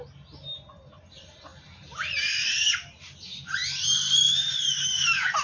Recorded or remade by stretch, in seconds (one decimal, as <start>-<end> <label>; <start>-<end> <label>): 0.0-5.4 recorded